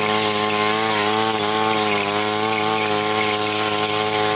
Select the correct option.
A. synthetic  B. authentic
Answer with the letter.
B